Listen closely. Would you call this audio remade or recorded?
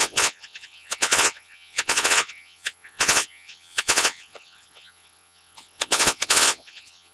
remade